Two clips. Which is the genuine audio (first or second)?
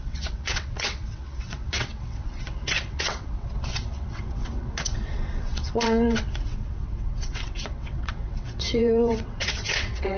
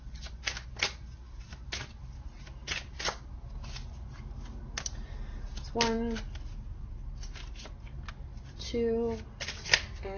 second